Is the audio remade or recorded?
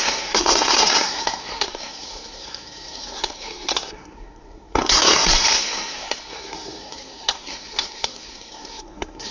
remade